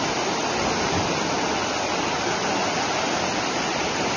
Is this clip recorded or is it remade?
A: recorded